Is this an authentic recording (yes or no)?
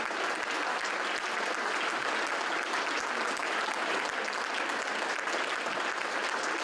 yes